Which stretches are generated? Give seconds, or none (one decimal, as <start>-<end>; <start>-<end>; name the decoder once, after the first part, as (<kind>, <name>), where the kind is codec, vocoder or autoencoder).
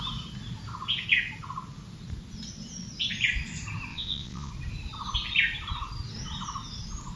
3.9-4.5 (vocoder, Vocos)